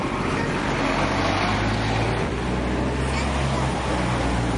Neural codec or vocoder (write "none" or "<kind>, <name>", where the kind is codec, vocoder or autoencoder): none